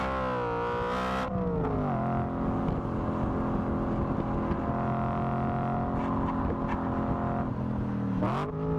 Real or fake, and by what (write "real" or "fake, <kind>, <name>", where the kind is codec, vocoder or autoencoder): real